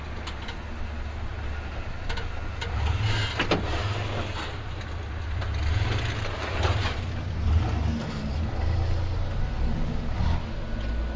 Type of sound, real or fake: real